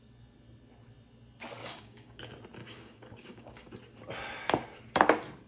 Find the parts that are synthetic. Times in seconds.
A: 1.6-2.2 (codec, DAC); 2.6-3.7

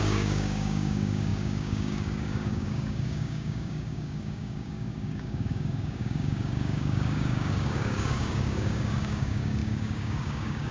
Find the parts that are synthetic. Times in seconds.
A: 0.0-10.7 (codec, DAC)

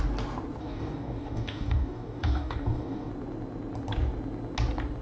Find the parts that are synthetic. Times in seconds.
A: 0.6-3.1 (codec, DAC)

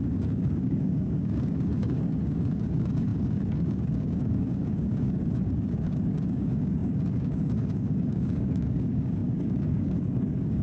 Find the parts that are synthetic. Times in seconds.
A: 0.0-10.6 (codec, DAC)

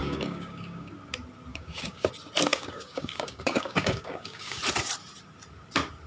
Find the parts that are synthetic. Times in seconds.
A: 0.0-0.9 (codec, DAC); 1.5-2.1; 2.5-4.6

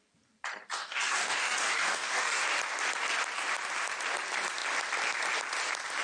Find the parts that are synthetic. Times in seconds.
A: 0.8-2.4 (codec, DAC)